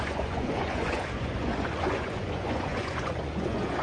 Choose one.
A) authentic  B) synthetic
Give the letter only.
B